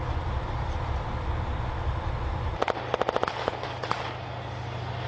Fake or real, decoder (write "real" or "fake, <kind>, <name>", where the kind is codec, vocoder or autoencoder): real